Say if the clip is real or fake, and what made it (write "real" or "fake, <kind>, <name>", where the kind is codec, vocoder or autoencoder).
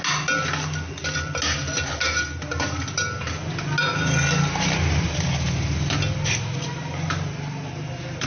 real